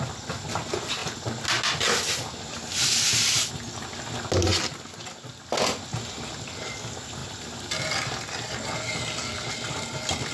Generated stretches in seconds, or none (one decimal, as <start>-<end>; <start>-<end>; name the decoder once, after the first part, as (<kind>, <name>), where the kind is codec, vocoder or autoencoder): none